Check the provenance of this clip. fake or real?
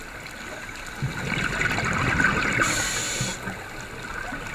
real